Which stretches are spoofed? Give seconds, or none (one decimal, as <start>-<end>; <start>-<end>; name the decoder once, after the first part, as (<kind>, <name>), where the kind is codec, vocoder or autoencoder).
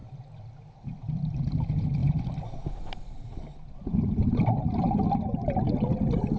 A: none